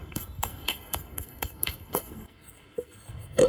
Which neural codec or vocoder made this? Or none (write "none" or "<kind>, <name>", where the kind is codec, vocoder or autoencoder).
codec, SNAC